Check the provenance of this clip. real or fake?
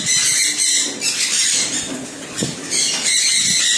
real